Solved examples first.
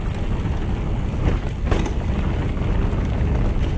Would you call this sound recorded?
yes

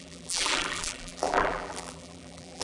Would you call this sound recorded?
no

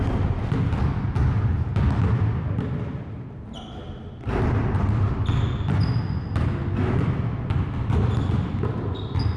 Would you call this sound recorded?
yes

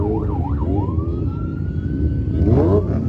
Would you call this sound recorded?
yes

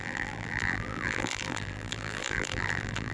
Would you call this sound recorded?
no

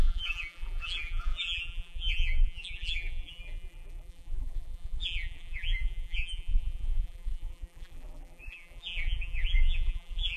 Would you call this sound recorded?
no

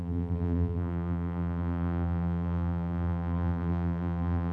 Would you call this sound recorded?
no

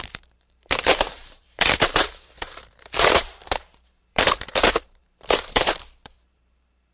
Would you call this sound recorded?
no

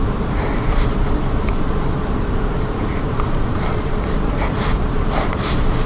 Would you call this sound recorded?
no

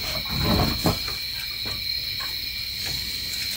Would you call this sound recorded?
yes